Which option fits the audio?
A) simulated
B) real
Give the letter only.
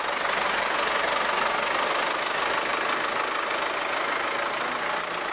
B